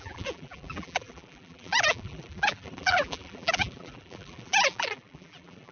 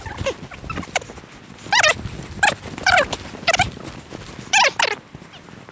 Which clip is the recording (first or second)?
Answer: second